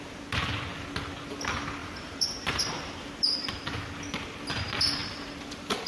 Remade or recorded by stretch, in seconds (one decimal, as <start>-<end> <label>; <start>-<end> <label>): 0.0-1.8 recorded; 1.8-3.5 remade; 3.5-5.9 recorded